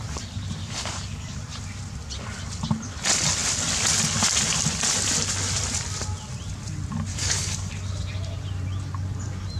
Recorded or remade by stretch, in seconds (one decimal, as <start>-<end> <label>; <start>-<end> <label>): 0.0-0.6 recorded; 0.6-1.4 remade; 1.4-7.1 recorded; 7.1-7.7 remade; 7.7-9.6 recorded